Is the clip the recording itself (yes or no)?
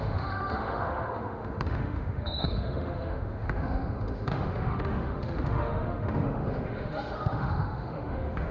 no